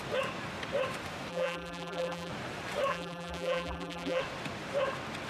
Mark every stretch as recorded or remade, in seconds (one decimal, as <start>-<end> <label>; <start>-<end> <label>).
0.0-1.3 recorded; 1.3-2.3 remade; 2.3-2.9 recorded; 2.9-4.2 remade; 4.2-5.3 recorded